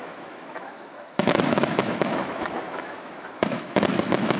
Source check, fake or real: fake